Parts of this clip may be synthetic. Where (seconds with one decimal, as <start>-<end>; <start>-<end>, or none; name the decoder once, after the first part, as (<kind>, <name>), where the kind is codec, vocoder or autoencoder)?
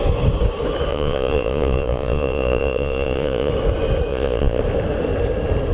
0.9-3.5 (vocoder, Vocos); 4.1-4.6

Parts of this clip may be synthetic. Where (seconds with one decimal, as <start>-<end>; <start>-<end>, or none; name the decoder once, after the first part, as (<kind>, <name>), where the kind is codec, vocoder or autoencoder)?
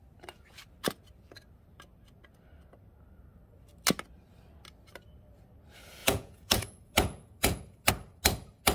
6.0-7.9 (vocoder, Vocos)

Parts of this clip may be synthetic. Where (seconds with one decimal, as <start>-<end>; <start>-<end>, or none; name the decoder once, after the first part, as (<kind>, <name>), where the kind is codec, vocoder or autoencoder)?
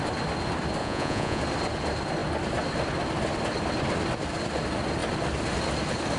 0.8-1.4 (vocoder, Vocos)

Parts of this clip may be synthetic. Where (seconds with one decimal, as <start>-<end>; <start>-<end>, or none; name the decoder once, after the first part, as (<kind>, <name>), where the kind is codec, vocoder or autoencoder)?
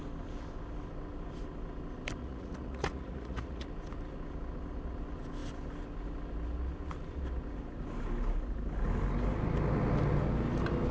2.2-3.7 (vocoder, Vocos)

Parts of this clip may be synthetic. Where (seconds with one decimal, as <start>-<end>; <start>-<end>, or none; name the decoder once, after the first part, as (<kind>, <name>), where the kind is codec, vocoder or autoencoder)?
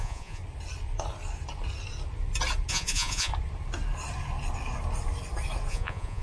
0.0-0.4 (vocoder, Vocos); 2.7-3.3; 5.7-6.2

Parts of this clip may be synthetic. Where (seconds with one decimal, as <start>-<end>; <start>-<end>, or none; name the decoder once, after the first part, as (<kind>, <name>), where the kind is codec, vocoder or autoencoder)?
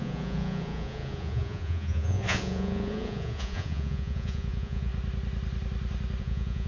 0.0-4.9 (vocoder, Vocos); 6.2-6.7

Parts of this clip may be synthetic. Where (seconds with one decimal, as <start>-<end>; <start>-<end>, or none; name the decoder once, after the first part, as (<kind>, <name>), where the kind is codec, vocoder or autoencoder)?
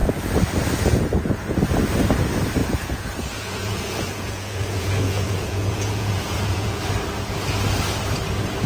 2.6-6.8 (vocoder, Vocos)